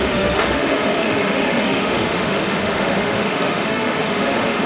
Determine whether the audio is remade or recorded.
remade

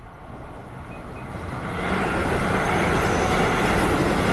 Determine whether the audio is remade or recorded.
recorded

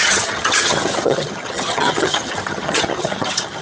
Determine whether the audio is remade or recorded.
remade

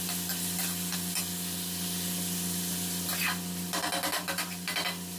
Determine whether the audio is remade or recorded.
recorded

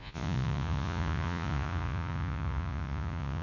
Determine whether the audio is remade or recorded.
remade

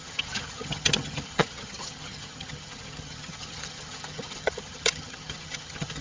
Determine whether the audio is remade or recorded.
remade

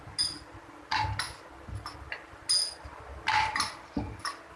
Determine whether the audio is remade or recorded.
recorded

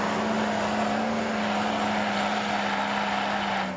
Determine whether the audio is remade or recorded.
recorded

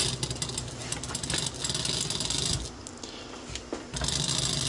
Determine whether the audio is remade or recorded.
recorded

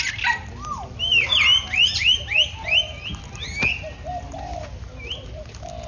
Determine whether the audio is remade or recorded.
recorded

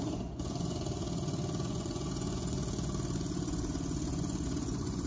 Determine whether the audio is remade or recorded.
remade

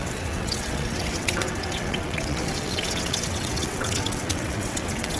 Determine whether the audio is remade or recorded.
remade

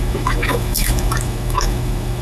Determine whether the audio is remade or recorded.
remade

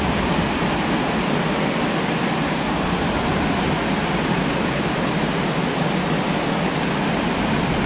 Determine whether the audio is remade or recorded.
recorded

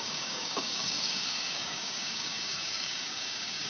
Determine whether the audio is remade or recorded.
remade